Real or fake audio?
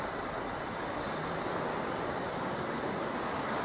real